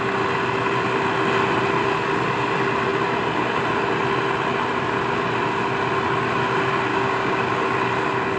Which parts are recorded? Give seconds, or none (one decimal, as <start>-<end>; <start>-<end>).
0.0-6.9; 7.5-8.4